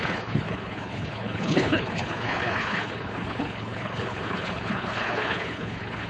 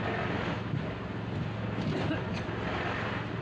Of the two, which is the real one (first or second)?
second